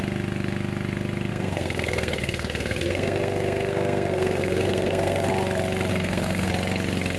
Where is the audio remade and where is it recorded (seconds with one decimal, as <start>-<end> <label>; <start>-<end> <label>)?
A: 0.0-1.3 recorded; 1.3-5.3 remade; 5.3-5.9 recorded; 5.9-6.5 remade; 6.5-7.2 recorded